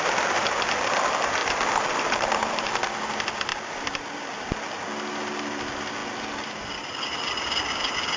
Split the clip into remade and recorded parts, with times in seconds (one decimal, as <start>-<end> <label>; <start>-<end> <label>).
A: 0.0-1.4 recorded; 1.4-2.7 remade; 2.7-3.5 recorded; 3.5-4.0 remade; 4.0-8.2 recorded